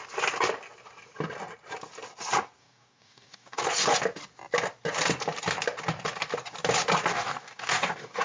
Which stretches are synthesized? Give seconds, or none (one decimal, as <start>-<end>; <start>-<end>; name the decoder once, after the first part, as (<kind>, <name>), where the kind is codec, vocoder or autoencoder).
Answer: 2.6-3.6 (codec, DAC); 7.1-8.2